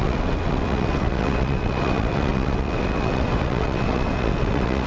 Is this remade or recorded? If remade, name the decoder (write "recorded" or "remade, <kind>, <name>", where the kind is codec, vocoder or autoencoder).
remade, vocoder, WaveNeXt